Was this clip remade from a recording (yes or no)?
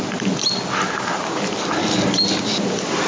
no